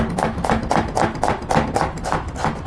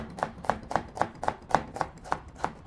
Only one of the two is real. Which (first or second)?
first